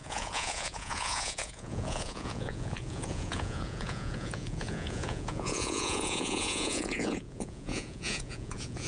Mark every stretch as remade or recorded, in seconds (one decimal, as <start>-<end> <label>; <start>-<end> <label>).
0.0-8.9 remade

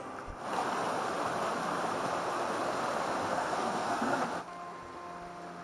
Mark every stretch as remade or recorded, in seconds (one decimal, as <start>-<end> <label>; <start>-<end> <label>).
0.0-3.3 recorded; 3.3-4.2 remade; 4.2-5.6 recorded

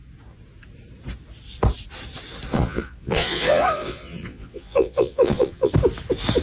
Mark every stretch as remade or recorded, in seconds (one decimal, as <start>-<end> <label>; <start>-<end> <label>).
0.0-2.5 recorded; 2.5-5.7 remade; 5.7-6.4 recorded

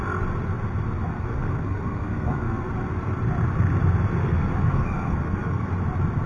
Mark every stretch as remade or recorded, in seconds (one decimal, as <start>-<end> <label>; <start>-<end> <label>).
0.0-1.1 recorded; 1.1-2.7 remade; 2.7-4.2 recorded; 4.2-5.7 remade; 5.7-6.3 recorded

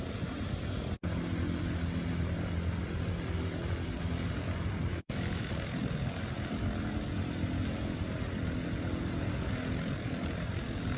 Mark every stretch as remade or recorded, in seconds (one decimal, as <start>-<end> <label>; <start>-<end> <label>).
0.0-4.9 recorded; 4.9-5.5 remade; 5.5-11.0 recorded